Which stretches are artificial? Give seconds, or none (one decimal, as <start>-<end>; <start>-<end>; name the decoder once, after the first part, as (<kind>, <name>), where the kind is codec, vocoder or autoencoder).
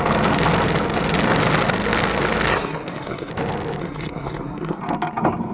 2.5-3.3 (codec, SNAC); 3.8-4.8